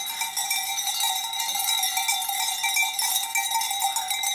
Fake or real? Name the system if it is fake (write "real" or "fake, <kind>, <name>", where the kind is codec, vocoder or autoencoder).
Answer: real